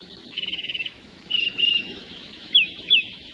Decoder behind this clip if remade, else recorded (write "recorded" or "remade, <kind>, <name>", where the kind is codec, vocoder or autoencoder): remade, autoencoder, DAC-VAE